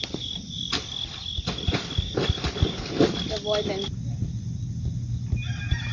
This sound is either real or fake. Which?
real